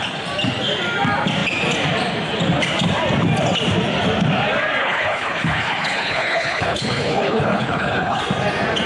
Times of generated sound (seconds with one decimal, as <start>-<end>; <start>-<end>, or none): 4.8-8.2